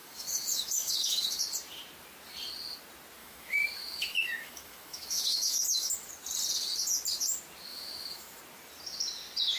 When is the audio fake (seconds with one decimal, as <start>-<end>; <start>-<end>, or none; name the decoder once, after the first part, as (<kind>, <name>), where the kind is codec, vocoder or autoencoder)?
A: 0.0-1.4 (autoencoder, DAC-VAE); 3.2-6.1; 7.7-8.4